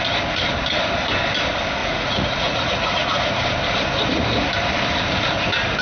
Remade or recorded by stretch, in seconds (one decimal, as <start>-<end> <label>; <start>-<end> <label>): 0.0-1.8 recorded; 1.8-3.4 remade; 3.4-5.8 recorded

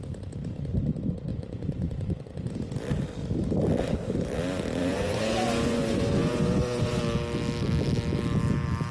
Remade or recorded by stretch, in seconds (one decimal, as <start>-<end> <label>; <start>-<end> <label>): 0.0-1.3 recorded; 1.3-2.5 remade; 2.5-4.8 recorded; 4.8-7.0 remade; 7.0-8.9 recorded

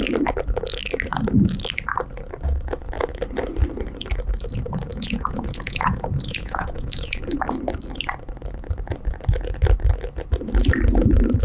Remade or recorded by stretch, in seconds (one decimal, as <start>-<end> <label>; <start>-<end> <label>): 0.0-4.9 recorded; 4.9-7.4 remade; 7.4-11.4 recorded

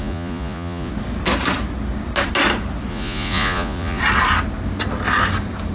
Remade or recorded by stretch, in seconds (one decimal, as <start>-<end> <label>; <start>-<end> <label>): 0.0-0.9 remade; 0.9-2.9 recorded; 2.9-4.0 remade; 4.0-5.7 recorded

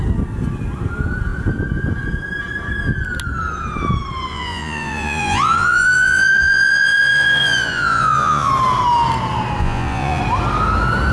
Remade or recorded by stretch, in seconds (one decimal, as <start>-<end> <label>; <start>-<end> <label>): 0.0-4.3 recorded; 4.3-8.5 remade; 8.5-9.6 recorded; 9.6-10.2 remade; 10.2-11.1 recorded